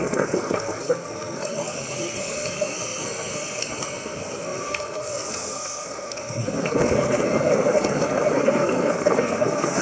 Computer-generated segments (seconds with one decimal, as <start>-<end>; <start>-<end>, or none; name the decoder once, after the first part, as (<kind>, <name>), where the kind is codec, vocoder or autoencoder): 0.0-9.8 (codec, SNAC)